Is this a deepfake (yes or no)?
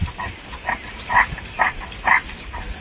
no